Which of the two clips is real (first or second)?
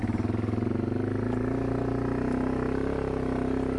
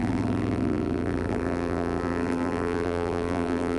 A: first